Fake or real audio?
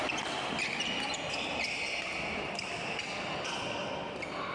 real